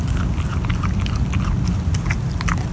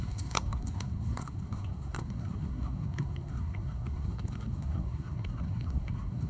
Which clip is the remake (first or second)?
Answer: second